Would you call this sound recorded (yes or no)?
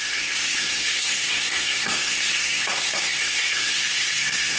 no